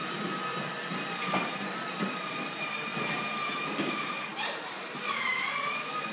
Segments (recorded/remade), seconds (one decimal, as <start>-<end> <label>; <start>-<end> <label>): 0.0-2.9 remade; 2.9-3.7 recorded; 3.7-6.1 remade